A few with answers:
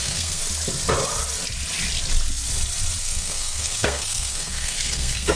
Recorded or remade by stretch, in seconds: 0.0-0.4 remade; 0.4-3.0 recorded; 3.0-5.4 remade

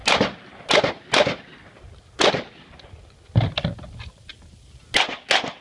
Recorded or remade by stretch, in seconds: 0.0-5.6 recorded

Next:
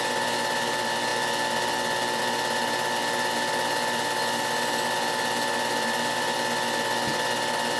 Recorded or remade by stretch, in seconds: 0.0-7.8 recorded

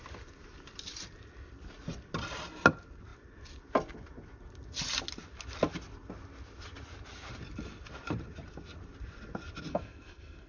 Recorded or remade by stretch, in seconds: 0.0-9.7 recorded; 9.7-10.5 remade

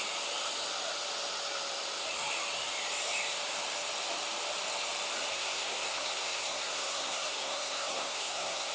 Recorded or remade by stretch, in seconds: 0.0-5.3 recorded; 5.3-8.7 remade